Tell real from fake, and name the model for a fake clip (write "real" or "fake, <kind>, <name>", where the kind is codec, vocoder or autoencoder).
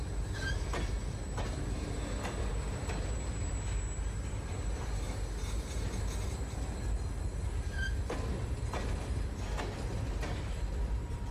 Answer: real